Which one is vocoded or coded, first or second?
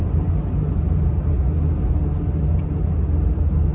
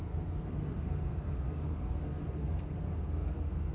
second